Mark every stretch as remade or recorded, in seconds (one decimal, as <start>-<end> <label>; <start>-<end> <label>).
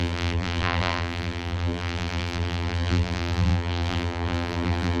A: 0.0-5.0 remade